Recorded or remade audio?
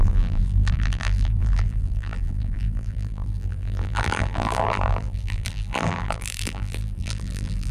remade